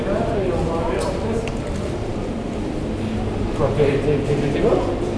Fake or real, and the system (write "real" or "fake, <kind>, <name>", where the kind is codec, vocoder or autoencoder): real